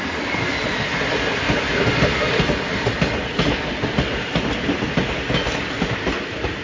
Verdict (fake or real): real